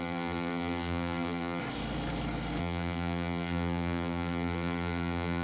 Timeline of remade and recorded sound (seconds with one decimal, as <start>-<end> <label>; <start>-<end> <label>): 0.0-1.6 remade; 1.6-2.6 recorded; 2.6-5.4 remade